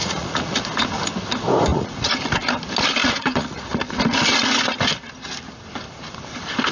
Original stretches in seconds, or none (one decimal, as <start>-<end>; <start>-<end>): 0.6-1.7; 2.2-3.0; 3.7-6.7